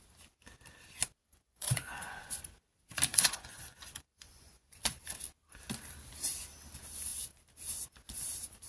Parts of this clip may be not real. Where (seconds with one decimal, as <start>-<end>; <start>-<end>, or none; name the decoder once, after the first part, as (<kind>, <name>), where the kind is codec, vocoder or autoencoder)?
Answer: 1.2-2.4 (vocoder, Vocos); 3.1-4.8